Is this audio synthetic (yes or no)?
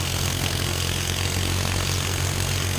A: yes